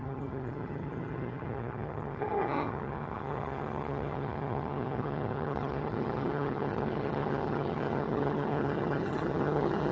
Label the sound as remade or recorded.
remade